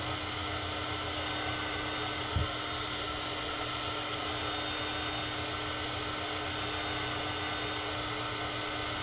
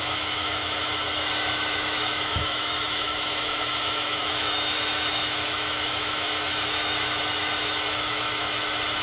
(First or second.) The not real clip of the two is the second